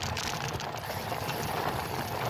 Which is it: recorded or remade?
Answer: recorded